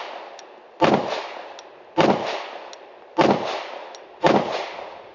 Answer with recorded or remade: recorded